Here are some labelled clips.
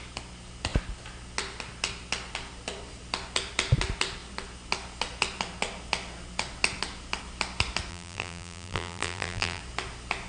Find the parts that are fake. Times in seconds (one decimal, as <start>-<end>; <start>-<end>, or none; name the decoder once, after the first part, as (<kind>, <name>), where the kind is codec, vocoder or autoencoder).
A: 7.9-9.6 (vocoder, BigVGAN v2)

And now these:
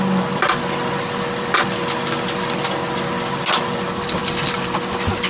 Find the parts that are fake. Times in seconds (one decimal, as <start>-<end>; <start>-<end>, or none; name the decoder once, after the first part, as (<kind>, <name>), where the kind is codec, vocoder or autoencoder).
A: 4.2-5.3 (vocoder, BigVGAN v2)

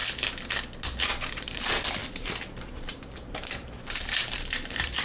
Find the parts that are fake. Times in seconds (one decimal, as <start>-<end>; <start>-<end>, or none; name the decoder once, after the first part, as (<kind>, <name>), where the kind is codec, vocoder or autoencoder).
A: 1.3-5.0 (vocoder, BigVGAN v2)

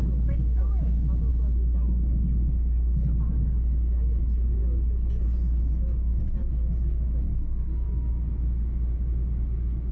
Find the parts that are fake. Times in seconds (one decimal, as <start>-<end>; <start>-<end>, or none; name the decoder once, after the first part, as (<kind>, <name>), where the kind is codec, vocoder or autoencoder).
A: none

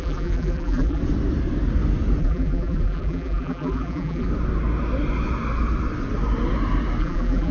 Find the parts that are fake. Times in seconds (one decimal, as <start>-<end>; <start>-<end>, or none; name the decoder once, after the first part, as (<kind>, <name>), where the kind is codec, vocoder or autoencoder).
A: 0.0-1.0 (vocoder, BigVGAN v2); 2.2-4.3; 7.0-7.5

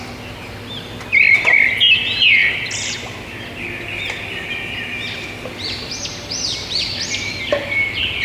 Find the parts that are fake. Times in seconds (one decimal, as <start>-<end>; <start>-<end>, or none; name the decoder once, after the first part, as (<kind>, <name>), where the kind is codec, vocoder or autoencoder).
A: none